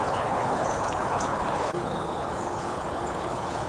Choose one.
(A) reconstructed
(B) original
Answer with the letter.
A